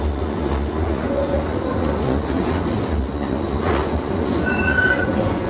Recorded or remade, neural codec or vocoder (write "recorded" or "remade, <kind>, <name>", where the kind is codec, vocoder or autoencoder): remade, vocoder, Vocos